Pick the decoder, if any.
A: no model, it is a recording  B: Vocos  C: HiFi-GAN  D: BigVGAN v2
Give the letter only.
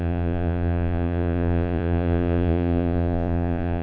B